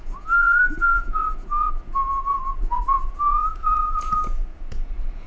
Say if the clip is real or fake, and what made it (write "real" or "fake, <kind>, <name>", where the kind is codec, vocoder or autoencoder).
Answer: fake, vocoder, Vocos